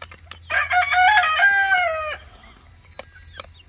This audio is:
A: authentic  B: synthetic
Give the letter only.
A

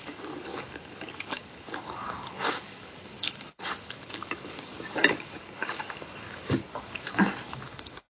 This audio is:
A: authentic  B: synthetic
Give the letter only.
B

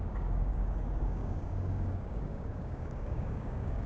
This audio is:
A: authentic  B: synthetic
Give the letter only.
B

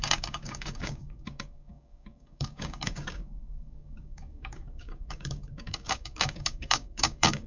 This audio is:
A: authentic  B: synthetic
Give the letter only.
B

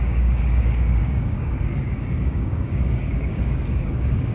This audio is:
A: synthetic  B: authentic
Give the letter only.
A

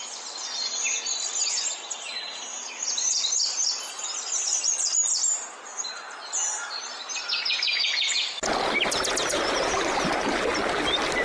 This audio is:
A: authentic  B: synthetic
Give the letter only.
A